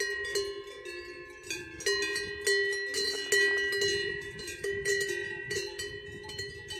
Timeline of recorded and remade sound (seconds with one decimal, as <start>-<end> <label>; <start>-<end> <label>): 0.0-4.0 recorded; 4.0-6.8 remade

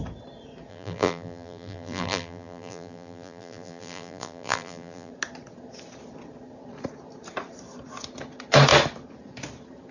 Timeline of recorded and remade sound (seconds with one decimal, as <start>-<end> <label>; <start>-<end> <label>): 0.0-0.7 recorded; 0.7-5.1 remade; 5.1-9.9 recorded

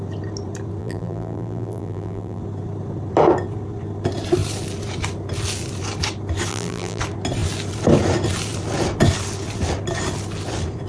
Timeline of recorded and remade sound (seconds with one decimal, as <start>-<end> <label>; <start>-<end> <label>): 0.0-0.8 recorded; 0.8-2.4 remade; 2.4-6.5 recorded; 6.5-7.0 remade; 7.0-10.9 recorded

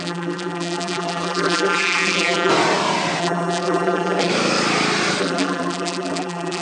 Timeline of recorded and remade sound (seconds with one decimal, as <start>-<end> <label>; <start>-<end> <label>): 0.0-2.5 remade; 2.5-3.2 recorded; 3.2-4.3 remade; 4.3-5.2 recorded; 5.2-6.6 remade

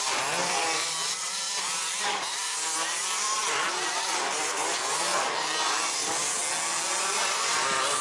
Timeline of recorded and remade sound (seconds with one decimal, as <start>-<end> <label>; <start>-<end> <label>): 0.0-6.4 remade; 6.4-7.0 recorded; 7.0-8.0 remade

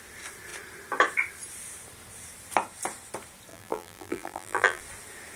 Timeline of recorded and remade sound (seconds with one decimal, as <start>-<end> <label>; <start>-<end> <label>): 0.0-3.5 recorded; 3.5-4.8 remade; 4.8-5.4 recorded

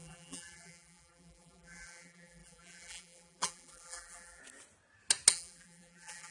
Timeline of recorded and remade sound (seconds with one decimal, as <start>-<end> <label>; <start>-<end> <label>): 0.0-4.4 remade; 4.4-5.3 recorded; 5.3-6.3 remade

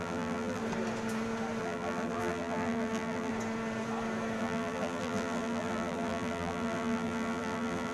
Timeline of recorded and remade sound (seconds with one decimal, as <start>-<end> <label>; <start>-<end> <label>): 0.0-0.6 remade; 0.6-1.6 recorded; 1.6-3.3 remade; 3.3-4.4 recorded; 4.4-7.9 remade